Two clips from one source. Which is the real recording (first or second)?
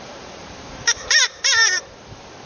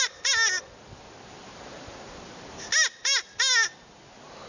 second